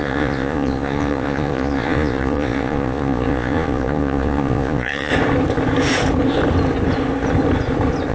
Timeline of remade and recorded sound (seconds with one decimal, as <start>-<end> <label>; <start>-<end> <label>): 0.0-5.1 remade; 5.1-8.1 recorded